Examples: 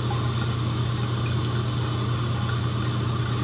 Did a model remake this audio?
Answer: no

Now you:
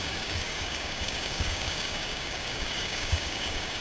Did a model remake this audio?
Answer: yes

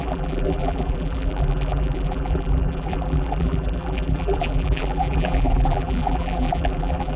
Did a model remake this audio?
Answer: yes